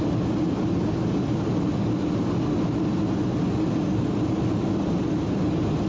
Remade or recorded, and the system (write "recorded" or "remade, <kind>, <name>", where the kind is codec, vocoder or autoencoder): recorded